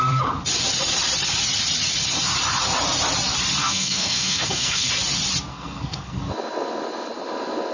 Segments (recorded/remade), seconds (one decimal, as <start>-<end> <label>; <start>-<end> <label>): 0.0-3.6 recorded; 3.6-4.9 remade; 4.9-5.5 recorded; 5.5-6.2 remade; 6.2-7.7 recorded